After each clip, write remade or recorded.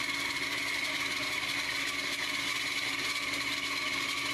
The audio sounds recorded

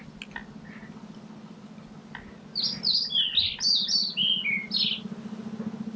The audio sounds recorded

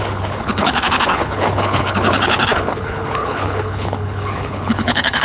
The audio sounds remade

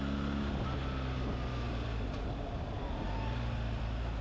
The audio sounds recorded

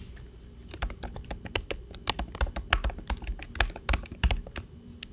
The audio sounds recorded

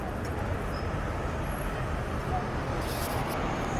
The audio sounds recorded